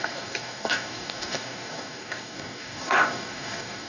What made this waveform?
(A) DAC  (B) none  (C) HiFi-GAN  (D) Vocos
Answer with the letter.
A